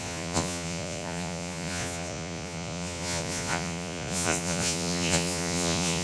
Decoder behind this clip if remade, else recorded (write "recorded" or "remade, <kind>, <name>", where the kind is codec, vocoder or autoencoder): remade, vocoder, Vocos